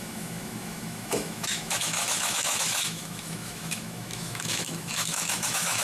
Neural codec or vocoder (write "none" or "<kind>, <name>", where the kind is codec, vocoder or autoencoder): autoencoder, DAC-VAE